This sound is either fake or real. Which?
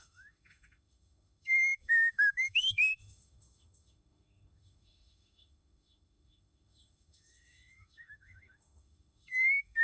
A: fake